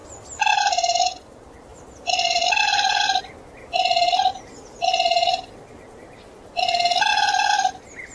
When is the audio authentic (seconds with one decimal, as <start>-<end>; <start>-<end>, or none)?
0.0-1.7; 3.2-8.1